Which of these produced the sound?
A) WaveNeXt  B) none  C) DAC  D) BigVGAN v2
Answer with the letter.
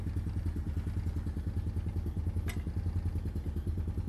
B